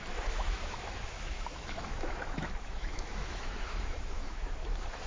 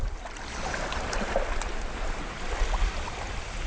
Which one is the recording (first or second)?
second